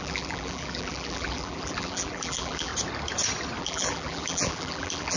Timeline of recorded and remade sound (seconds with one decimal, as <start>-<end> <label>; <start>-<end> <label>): 0.0-2.7 remade; 2.7-3.6 recorded; 3.6-5.2 remade